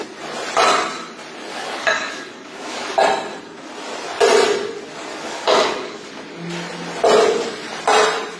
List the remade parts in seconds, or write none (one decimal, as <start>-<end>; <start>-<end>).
1.5-3.0; 5.1-6.2